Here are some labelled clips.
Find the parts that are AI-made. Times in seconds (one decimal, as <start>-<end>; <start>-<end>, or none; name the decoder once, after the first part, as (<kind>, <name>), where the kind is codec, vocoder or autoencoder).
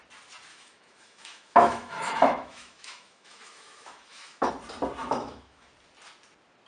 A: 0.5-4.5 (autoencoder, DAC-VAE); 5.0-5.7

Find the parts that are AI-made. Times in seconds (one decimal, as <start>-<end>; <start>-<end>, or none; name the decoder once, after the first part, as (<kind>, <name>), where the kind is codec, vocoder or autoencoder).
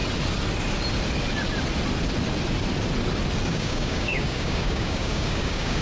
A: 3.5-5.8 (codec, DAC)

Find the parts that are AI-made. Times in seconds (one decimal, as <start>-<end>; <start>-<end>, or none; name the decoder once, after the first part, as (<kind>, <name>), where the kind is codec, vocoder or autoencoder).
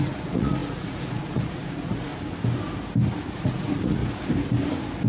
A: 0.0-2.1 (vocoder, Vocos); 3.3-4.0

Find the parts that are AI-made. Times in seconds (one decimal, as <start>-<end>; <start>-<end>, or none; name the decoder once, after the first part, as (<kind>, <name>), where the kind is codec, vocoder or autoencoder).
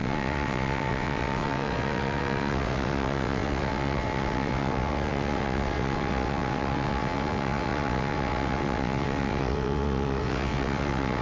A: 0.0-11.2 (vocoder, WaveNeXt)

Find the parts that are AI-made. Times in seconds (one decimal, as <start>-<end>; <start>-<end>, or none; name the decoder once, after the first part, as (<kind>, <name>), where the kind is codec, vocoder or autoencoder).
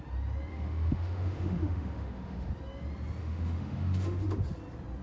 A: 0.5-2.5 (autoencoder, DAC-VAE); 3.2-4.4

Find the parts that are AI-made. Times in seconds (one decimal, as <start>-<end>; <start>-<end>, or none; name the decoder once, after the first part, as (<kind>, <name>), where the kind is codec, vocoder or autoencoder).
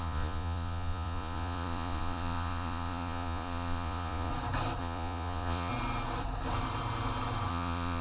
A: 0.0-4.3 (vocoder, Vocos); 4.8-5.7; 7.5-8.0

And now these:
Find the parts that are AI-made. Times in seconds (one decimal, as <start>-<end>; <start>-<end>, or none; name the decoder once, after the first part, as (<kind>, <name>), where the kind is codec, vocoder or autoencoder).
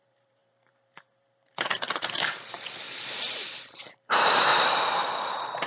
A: 0.0-5.7 (vocoder, BigVGAN v2)